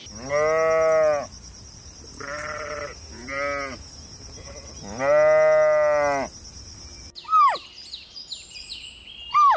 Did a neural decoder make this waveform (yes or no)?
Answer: no